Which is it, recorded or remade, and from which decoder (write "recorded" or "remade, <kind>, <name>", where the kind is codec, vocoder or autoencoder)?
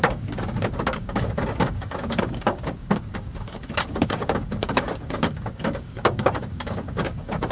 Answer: remade, codec, DAC